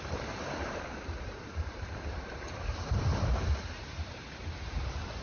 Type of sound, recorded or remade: remade